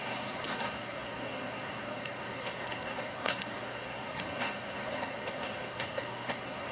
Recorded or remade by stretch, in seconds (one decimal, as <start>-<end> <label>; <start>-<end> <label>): 0.0-6.7 remade